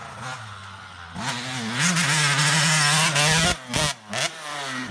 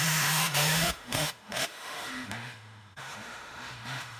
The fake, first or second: second